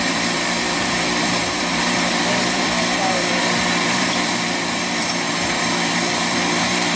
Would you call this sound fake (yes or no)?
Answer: yes